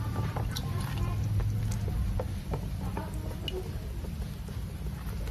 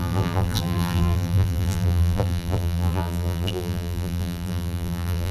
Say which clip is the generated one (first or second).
second